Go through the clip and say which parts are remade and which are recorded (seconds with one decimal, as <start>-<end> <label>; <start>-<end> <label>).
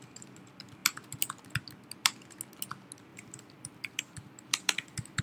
0.0-3.1 recorded; 3.1-5.2 remade